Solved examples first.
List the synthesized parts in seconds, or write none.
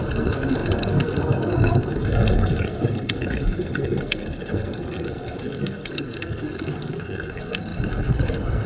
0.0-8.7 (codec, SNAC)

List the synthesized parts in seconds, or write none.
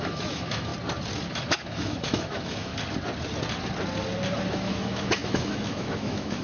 0.0-0.7 (autoencoder, DAC-VAE); 1.3-2.7; 4.5-6.4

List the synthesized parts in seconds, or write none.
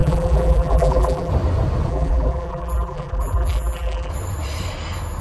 0.0-1.3 (vocoder, BigVGAN v2); 1.9-4.1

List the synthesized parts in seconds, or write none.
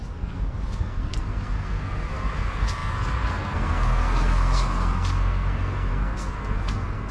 0.0-7.1 (codec, SNAC)